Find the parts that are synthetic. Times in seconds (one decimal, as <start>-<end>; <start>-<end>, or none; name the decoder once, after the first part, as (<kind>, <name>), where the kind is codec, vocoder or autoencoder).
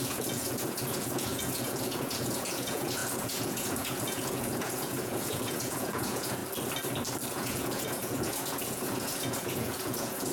0.0-6.4 (vocoder, Vocos); 7.3-10.3